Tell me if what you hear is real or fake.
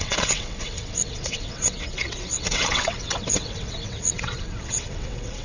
fake